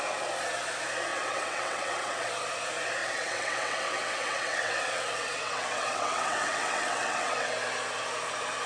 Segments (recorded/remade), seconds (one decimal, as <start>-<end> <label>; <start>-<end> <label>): 0.0-1.1 recorded; 1.1-2.3 remade; 2.3-3.0 recorded; 3.0-7.5 remade; 7.5-8.7 recorded